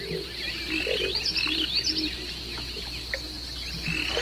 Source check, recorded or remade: recorded